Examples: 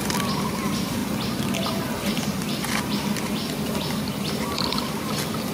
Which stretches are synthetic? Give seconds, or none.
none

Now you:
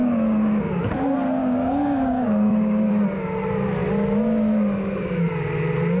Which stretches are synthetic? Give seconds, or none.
0.0-0.9; 1.4-2.9

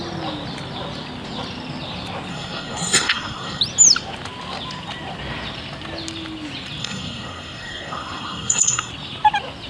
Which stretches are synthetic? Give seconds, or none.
2.3-3.6; 6.8-8.9

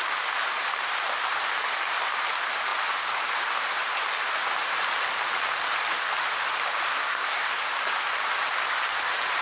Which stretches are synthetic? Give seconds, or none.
6.9-7.6

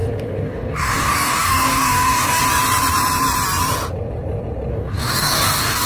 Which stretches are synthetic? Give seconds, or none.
0.0-2.4; 4.7-5.9

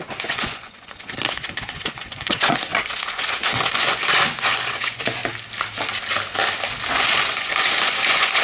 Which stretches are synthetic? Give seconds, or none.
0.0-5.2; 6.9-8.4